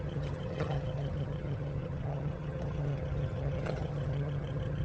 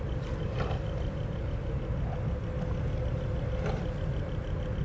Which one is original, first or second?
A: second